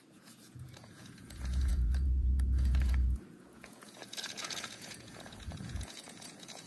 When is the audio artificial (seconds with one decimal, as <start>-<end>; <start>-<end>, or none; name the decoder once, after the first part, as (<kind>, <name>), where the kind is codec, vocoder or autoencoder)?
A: 0.0-6.7 (vocoder, Vocos)

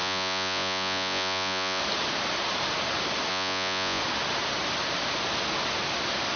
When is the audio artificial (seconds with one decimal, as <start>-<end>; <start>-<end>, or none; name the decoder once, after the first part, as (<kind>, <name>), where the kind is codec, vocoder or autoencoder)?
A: 0.0-1.8 (vocoder, Vocos); 3.3-4.0

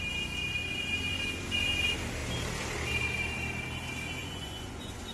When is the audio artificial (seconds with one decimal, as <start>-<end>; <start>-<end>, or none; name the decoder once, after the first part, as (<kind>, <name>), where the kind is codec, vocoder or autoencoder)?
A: 4.2-5.1 (vocoder, Vocos)

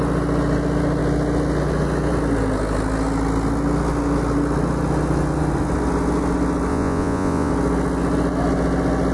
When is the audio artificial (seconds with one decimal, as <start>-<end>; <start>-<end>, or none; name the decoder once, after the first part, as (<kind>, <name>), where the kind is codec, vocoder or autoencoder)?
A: 6.7-7.5 (vocoder, Vocos)

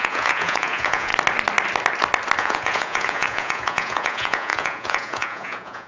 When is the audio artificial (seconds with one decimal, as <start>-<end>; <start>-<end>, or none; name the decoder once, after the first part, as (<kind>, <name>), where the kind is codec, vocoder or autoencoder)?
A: 0.0-1.1 (vocoder, Vocos); 2.4-5.9

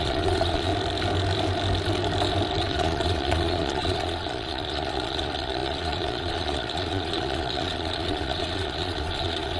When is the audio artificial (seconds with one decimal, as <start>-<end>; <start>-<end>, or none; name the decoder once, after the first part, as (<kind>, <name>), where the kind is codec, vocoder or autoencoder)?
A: 0.0-0.7 (vocoder, Vocos); 2.6-9.6

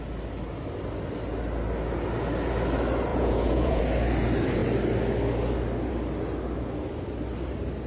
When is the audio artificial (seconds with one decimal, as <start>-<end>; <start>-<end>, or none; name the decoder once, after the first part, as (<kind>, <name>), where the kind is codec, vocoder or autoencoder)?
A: 3.1-3.8 (vocoder, Vocos)